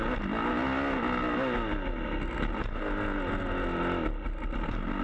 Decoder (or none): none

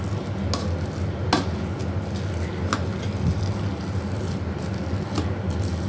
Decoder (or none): none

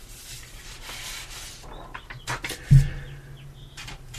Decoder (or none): none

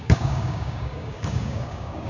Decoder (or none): codec, DAC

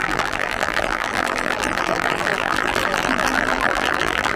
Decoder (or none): vocoder, BigVGAN v2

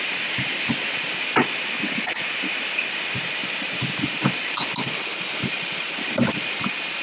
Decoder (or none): none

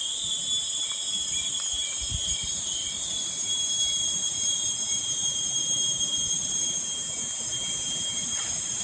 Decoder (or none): vocoder, BigVGAN v2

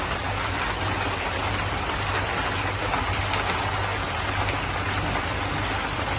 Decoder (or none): none